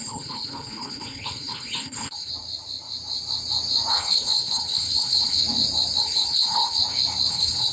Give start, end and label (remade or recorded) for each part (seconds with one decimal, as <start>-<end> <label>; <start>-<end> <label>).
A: 0.0-2.3 remade; 2.3-3.9 recorded; 3.9-5.4 remade; 5.4-6.0 recorded; 6.0-6.8 remade; 6.8-7.3 recorded; 7.3-7.7 remade